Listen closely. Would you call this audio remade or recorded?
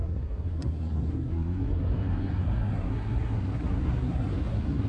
remade